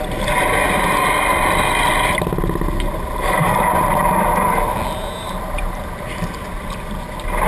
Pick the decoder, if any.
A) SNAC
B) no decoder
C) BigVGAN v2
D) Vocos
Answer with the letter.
B